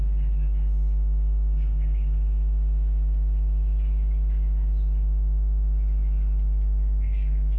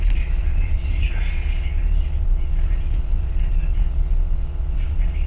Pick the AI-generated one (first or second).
second